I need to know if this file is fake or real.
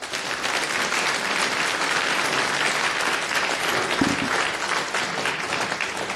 real